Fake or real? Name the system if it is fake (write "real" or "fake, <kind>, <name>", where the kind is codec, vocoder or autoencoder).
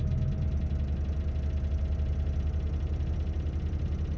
real